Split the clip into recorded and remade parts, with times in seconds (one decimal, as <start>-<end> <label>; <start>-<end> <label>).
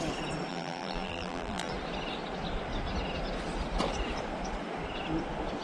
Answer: 0.0-0.5 recorded; 0.5-1.7 remade; 1.7-5.6 recorded